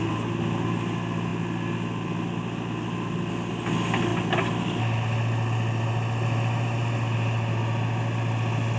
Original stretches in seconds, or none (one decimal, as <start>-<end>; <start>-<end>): 0.0-8.8